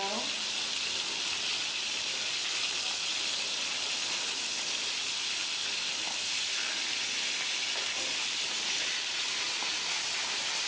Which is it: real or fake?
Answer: real